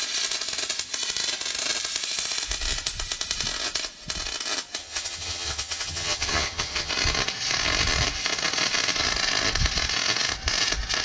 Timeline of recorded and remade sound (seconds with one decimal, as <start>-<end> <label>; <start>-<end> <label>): 0.0-4.8 recorded; 4.8-6.9 remade; 6.9-11.0 recorded